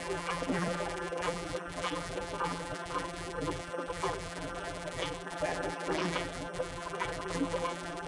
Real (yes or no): no